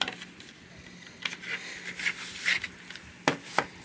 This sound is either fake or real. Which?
real